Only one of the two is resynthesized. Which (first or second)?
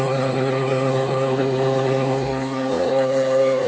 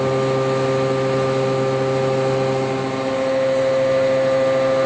first